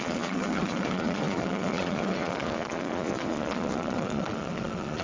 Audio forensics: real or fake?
fake